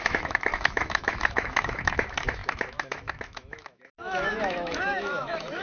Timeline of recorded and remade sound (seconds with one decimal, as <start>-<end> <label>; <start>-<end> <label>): 0.0-5.6 remade